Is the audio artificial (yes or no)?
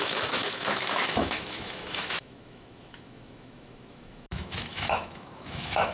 yes